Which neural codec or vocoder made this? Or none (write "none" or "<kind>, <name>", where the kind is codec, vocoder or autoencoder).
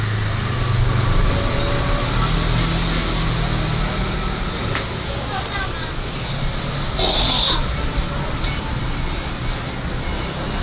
none